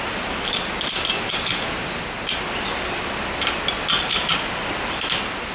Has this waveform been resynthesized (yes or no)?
no